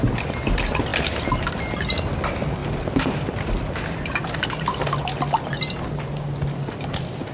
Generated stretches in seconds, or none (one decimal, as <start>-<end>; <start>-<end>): none